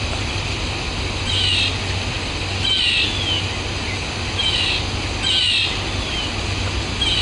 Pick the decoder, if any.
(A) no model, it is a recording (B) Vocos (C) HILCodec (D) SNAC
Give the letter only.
A